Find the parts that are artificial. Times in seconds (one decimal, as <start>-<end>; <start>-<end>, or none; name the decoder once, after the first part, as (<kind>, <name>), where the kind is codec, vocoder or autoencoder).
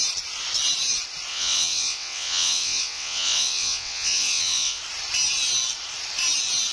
1.3-4.8 (vocoder, WaveNeXt)